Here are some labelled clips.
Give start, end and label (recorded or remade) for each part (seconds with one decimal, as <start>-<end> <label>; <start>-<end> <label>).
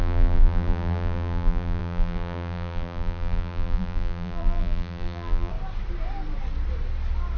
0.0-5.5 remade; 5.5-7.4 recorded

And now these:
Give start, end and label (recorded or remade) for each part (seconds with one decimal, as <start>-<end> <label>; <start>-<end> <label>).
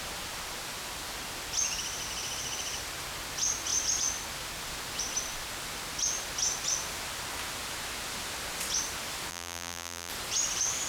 0.0-9.3 recorded; 9.3-10.1 remade; 10.1-10.9 recorded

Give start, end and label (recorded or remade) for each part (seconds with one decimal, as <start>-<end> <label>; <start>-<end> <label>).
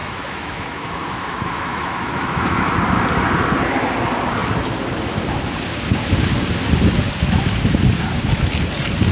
0.0-2.7 remade; 2.7-9.1 recorded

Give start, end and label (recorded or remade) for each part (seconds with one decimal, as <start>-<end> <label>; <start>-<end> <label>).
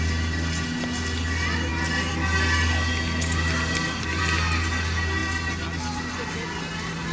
0.0-7.1 recorded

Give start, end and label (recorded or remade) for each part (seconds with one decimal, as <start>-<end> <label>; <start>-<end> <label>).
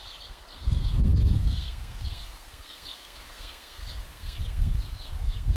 0.0-5.6 remade